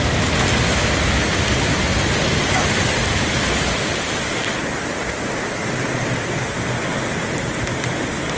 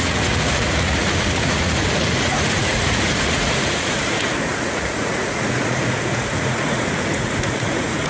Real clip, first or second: first